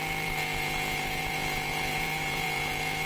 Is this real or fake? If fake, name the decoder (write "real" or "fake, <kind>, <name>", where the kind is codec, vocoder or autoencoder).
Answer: fake, vocoder, Vocos